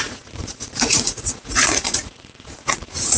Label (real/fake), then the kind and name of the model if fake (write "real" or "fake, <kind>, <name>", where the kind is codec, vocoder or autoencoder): fake, vocoder, Vocos